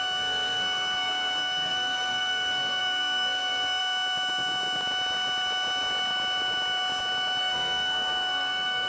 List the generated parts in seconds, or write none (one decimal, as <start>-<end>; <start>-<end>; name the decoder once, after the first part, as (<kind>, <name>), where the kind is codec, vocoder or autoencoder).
0.0-3.8 (codec, SNAC); 7.4-8.9